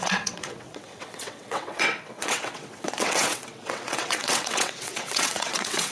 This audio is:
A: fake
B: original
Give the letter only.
A